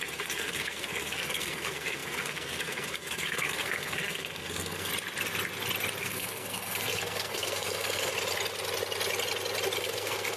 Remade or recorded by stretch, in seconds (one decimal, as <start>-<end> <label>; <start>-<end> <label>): 0.0-4.9 remade; 4.9-6.0 recorded; 6.0-8.1 remade; 8.1-9.8 recorded; 9.8-10.4 remade

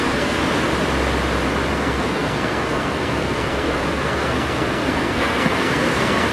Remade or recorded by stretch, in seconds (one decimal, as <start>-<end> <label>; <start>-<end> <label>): 0.0-0.4 remade; 0.4-1.7 recorded; 1.7-6.3 remade

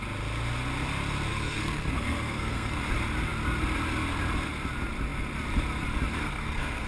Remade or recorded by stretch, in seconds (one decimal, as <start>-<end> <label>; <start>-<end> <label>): 0.0-1.3 recorded; 1.3-2.8 remade; 2.8-6.2 recorded; 6.2-6.9 remade

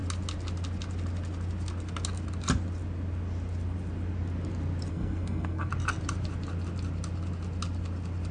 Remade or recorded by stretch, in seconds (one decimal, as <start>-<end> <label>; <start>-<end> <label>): 0.0-4.9 recorded; 4.9-5.7 remade; 5.7-8.3 recorded

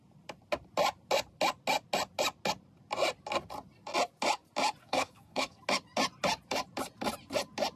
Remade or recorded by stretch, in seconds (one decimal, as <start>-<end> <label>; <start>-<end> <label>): 0.0-4.8 recorded; 4.8-5.6 remade; 5.6-7.8 recorded

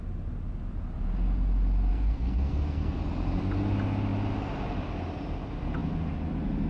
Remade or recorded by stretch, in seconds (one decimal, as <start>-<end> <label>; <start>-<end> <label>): 0.0-1.9 recorded; 1.9-3.0 remade; 3.0-6.7 recorded